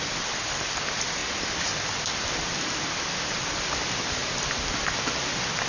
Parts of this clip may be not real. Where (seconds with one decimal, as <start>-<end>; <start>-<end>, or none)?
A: 0.0-1.2; 1.8-4.2